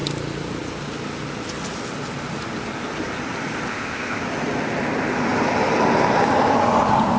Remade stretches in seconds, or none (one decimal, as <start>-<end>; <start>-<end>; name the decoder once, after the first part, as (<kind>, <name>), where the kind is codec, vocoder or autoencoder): 3.7-4.2 (codec, ZipCodec)